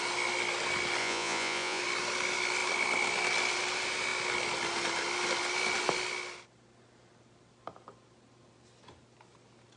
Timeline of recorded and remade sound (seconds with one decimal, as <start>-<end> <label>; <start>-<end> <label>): 0.0-1.0 recorded; 1.0-1.8 remade; 1.8-9.8 recorded